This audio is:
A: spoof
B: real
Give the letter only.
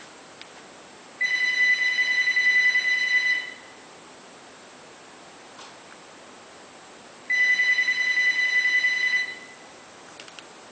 B